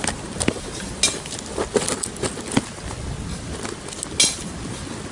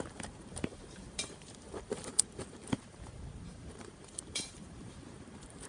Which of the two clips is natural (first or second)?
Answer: first